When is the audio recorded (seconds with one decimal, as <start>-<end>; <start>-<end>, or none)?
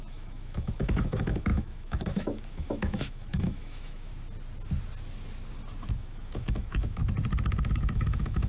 4.1-5.9; 7.0-7.7